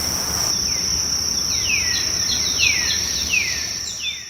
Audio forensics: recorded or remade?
recorded